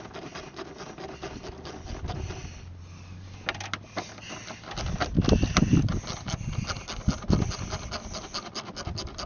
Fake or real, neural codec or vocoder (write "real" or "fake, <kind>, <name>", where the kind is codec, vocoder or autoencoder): real